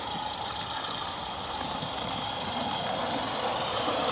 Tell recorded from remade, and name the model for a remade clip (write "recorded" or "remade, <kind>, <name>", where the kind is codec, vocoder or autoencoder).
recorded